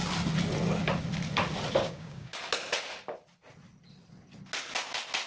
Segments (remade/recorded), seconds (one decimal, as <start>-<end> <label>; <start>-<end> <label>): 0.0-1.8 recorded; 1.8-2.4 remade; 2.4-5.3 recorded